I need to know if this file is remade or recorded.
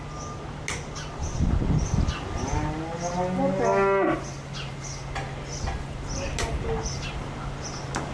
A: recorded